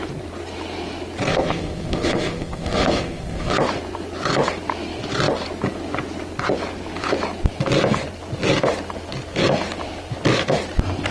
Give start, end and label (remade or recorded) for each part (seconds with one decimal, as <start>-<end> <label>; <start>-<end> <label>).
0.0-1.3 recorded; 1.3-3.5 remade; 3.5-11.1 recorded